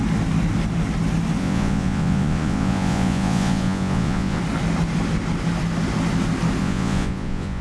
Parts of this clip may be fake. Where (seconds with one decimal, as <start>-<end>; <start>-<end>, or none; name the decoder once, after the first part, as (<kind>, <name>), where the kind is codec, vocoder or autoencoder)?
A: 1.4-4.4 (vocoder, Vocos); 6.6-7.6